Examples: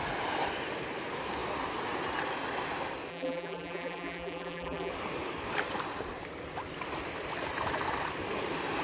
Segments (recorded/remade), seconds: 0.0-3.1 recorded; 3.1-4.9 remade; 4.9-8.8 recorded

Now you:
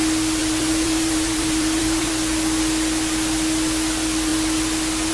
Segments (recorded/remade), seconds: 0.0-0.4 recorded; 0.4-2.1 remade; 2.1-5.1 recorded

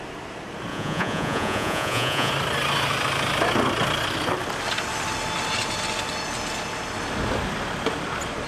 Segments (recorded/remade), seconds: 0.0-0.7 recorded; 0.7-2.3 remade; 2.3-8.5 recorded

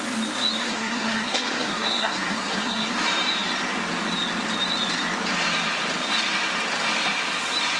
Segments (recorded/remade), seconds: 0.0-0.6 recorded; 0.6-2.9 remade; 2.9-7.8 recorded